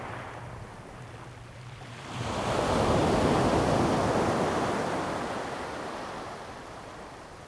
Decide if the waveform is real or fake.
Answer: real